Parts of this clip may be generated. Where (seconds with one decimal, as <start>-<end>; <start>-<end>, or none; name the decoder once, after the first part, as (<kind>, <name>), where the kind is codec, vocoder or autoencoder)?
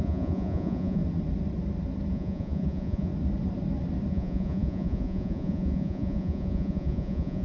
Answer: 0.0-1.0 (vocoder, Vocos); 2.1-3.1; 4.1-7.4